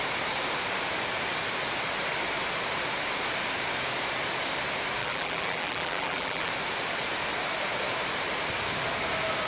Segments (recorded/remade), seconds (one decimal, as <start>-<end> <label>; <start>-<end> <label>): 0.0-5.0 recorded; 5.0-6.5 remade; 6.5-9.5 recorded